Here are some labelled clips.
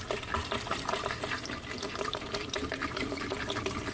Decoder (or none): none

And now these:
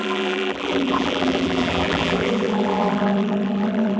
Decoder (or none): vocoder, BigVGAN v2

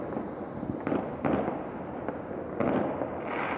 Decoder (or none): none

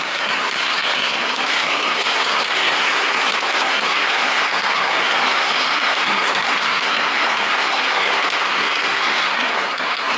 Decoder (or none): codec, SNAC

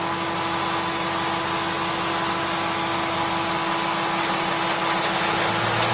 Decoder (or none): none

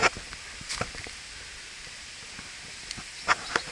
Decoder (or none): none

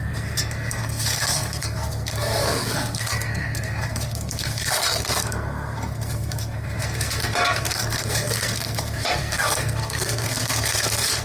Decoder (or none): codec, SNAC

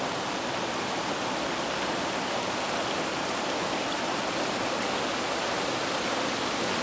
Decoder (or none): none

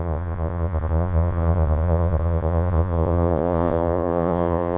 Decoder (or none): vocoder, Vocos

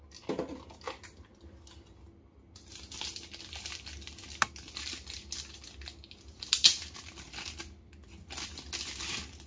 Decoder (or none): none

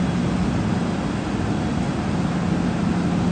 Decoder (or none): none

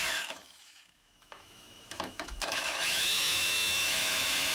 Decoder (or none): autoencoder, DAC-VAE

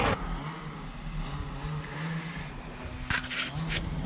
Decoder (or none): none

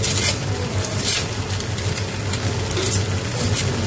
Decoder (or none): none